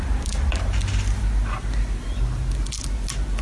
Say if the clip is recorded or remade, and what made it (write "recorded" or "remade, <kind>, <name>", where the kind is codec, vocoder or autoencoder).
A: recorded